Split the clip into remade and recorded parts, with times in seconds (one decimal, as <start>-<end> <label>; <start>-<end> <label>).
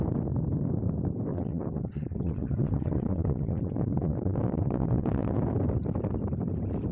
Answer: 0.0-1.3 recorded; 1.3-5.4 remade; 5.4-6.9 recorded